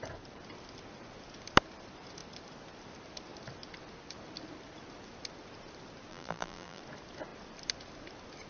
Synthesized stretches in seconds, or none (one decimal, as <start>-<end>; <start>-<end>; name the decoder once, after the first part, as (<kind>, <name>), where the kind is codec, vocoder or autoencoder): 6.1-6.8 (vocoder, BigVGAN v2)

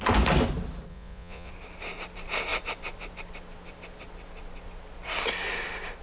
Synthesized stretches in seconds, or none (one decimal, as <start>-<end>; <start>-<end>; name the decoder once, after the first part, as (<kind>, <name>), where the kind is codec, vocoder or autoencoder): 0.9-1.5 (vocoder, Vocos)

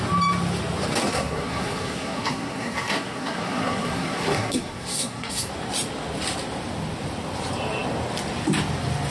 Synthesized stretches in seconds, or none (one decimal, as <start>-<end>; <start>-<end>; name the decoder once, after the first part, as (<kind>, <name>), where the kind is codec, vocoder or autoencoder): 1.0-5.5 (codec, SNAC)

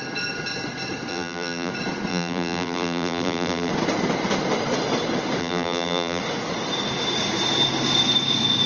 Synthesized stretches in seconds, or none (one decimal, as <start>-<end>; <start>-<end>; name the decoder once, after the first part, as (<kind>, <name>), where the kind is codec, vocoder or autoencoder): 1.1-1.7 (vocoder, BigVGAN v2); 2.1-3.7; 5.4-6.2

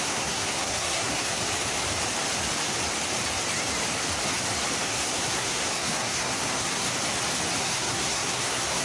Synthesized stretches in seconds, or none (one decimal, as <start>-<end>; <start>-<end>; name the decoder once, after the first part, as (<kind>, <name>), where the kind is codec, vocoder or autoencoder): 0.0-1.4 (codec, SNAC); 4.8-6.9; 7.6-8.8

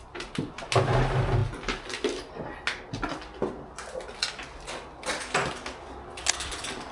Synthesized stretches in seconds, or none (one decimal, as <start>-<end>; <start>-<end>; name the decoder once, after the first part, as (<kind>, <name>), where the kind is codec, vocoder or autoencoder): none

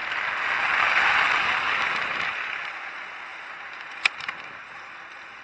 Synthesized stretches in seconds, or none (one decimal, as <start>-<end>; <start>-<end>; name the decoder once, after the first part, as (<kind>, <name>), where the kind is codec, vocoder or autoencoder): 3.3-5.4 (vocoder, BigVGAN v2)